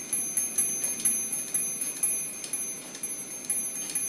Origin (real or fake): real